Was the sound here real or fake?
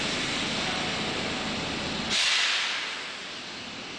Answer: real